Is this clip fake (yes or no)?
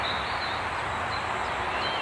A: no